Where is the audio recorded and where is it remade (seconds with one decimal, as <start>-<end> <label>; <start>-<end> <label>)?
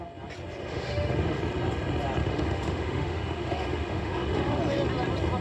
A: 0.0-0.6 recorded; 0.6-1.4 remade; 1.4-2.2 recorded; 2.2-4.6 remade; 4.6-5.4 recorded